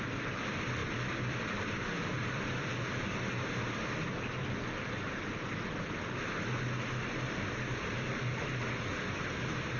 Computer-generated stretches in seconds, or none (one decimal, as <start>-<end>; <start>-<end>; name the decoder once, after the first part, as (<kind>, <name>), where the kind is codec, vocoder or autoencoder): 0.8-3.6 (vocoder, BigVGAN v2); 4.4-5.9